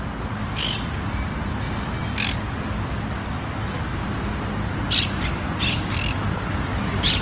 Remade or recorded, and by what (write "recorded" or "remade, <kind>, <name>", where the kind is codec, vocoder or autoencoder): recorded